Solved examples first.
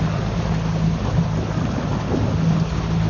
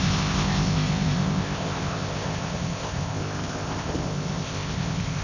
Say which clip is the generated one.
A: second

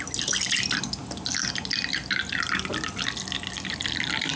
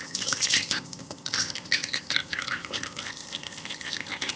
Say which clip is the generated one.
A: second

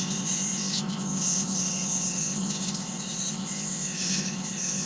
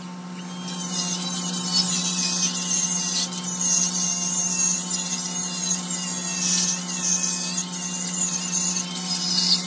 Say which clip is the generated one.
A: first